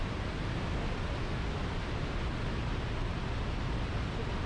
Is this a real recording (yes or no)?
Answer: yes